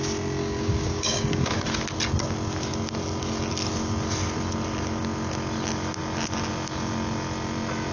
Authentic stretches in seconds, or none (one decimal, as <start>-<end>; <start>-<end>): 0.0-0.4; 1.6-7.9